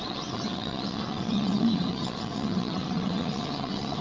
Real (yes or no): no